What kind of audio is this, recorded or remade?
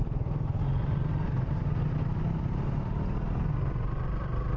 recorded